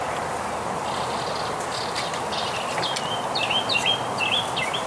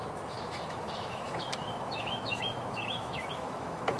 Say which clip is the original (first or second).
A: first